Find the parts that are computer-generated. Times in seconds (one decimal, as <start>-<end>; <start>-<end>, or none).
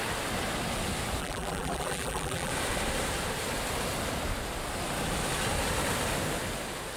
1.2-2.5